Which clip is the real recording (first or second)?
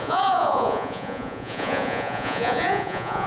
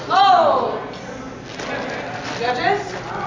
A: second